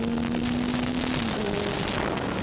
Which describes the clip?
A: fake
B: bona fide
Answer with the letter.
B